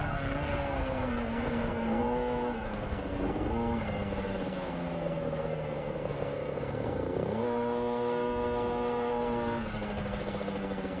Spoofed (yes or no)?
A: yes